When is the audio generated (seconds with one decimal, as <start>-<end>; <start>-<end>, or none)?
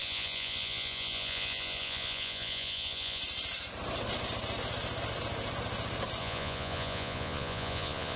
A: 0.0-3.2; 6.2-8.2